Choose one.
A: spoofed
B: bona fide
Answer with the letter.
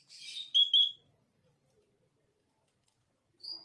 B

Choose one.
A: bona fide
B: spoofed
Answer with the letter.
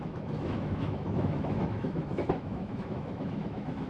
B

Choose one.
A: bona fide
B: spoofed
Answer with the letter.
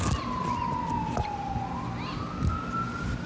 A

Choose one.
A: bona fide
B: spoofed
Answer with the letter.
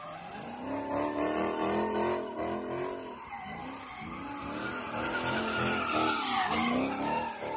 A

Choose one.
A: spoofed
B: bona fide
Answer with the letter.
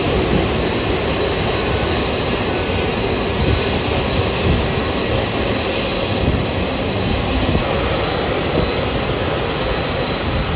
B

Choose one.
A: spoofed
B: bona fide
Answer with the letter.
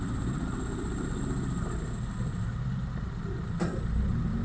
B